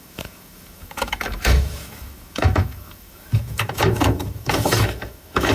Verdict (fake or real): fake